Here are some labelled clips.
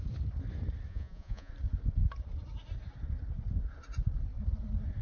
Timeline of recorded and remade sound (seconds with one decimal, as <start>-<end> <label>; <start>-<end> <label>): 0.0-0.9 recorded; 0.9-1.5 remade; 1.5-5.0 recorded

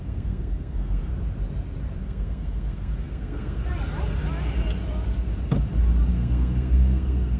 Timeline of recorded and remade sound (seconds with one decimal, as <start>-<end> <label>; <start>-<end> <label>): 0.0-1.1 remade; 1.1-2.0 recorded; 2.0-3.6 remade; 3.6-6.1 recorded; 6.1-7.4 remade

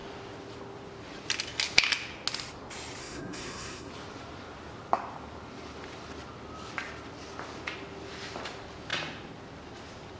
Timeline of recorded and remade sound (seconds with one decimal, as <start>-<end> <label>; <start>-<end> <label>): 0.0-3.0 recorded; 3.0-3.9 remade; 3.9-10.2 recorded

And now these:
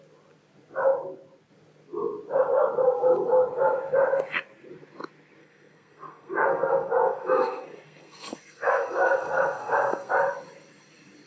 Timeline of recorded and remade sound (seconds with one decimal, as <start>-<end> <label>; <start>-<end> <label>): 0.0-5.4 recorded; 5.4-10.1 remade; 10.1-11.3 recorded

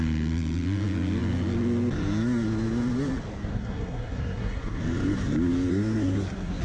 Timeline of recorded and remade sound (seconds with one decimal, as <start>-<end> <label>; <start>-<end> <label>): 0.0-3.5 recorded; 3.5-4.8 remade; 4.8-5.7 recorded; 5.7-6.6 remade